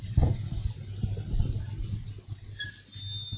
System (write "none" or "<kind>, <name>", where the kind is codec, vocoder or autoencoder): none